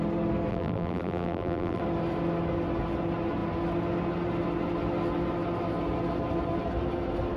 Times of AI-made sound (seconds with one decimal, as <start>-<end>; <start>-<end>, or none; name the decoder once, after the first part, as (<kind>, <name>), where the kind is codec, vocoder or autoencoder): 0.5-1.8 (vocoder, BigVGAN v2)